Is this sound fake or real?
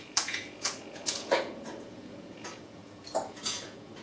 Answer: fake